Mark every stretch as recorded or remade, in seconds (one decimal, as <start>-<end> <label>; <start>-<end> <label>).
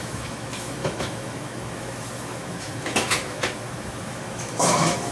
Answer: 0.0-5.1 remade